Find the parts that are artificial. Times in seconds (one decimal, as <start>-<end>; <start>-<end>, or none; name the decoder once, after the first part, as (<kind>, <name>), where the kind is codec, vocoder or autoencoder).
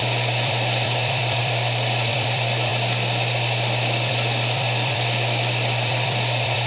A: 0.0-2.7 (vocoder, BigVGAN v2); 4.1-6.7